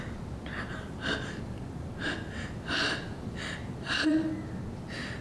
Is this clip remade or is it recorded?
recorded